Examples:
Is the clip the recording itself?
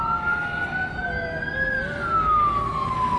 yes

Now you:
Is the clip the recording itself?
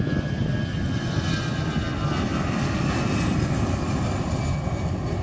yes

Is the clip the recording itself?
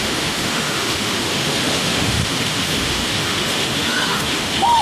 no